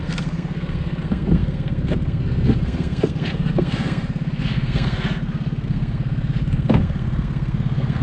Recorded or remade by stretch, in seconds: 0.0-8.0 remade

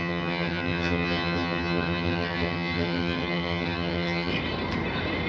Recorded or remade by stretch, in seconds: 0.0-4.3 remade; 4.3-5.3 recorded

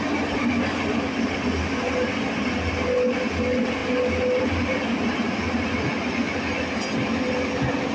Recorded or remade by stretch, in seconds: 0.0-7.9 recorded

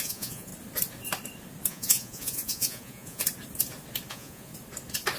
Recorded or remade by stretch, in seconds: 0.0-0.5 remade; 0.5-1.7 recorded; 1.7-3.2 remade; 3.2-4.1 recorded; 4.1-4.5 remade; 4.5-5.2 recorded

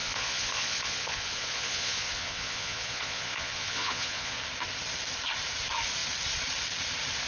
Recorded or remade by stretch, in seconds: 0.0-4.4 remade; 4.4-7.3 recorded

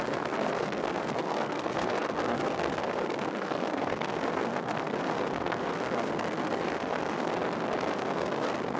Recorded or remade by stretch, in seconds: 0.0-7.3 remade; 7.3-7.9 recorded; 7.9-8.8 remade